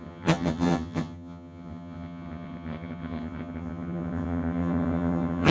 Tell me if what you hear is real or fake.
fake